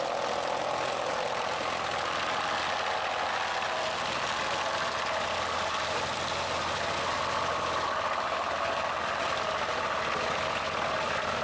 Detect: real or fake real